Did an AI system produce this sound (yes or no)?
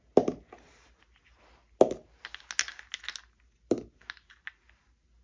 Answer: no